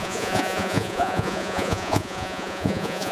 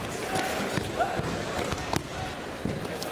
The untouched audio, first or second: second